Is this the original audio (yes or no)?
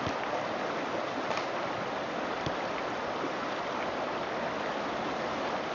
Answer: yes